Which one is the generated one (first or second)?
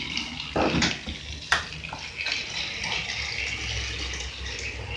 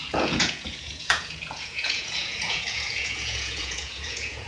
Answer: second